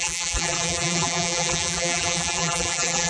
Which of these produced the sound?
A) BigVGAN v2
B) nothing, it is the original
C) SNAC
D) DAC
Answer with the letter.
A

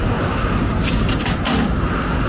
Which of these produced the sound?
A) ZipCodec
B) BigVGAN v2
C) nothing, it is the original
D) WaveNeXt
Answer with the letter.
C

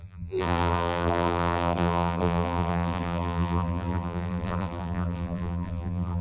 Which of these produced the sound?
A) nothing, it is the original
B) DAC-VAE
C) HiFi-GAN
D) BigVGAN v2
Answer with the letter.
D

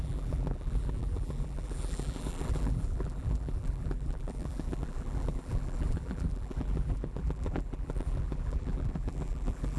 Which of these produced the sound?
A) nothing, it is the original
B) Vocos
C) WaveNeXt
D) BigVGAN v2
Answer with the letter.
D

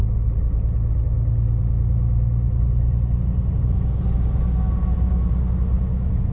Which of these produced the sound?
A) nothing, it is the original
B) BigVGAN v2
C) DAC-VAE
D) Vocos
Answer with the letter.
A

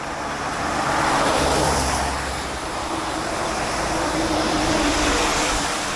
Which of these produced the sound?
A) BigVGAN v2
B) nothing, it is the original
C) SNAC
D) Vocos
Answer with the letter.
A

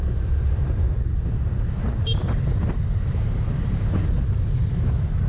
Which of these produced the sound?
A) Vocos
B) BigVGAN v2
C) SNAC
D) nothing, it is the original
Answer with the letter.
B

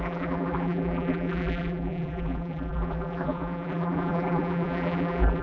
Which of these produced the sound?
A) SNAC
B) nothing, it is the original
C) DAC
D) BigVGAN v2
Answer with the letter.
D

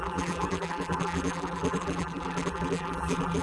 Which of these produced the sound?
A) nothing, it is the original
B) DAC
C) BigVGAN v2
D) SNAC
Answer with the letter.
C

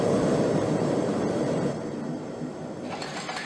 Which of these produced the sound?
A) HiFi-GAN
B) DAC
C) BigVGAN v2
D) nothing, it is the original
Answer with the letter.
C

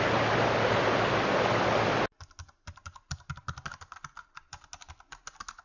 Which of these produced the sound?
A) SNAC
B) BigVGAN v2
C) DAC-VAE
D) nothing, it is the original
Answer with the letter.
D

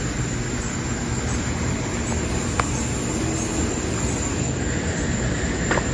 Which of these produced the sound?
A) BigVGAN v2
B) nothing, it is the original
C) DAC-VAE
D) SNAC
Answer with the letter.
B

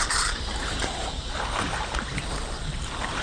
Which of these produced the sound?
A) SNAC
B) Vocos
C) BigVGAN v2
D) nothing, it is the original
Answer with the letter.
C